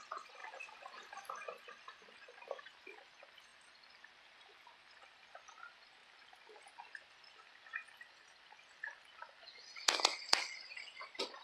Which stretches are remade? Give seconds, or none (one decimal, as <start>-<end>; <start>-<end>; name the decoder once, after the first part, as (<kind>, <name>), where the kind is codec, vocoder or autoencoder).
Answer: none